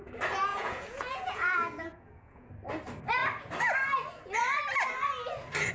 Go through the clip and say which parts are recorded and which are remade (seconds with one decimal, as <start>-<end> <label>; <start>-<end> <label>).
0.0-0.5 recorded; 0.5-2.5 remade; 2.5-5.7 recorded